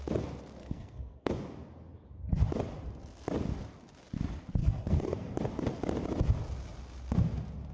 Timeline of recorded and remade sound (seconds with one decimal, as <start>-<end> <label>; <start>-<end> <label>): 0.0-0.6 recorded; 0.6-1.3 remade; 1.3-4.6 recorded; 4.6-5.3 remade; 5.3-7.7 recorded